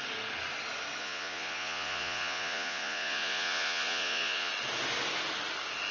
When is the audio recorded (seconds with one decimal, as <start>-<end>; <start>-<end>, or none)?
0.0-1.0; 4.5-5.9